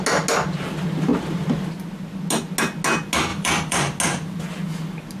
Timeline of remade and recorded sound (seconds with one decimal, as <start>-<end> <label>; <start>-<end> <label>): 0.0-3.3 recorded; 3.3-4.0 remade; 4.0-5.2 recorded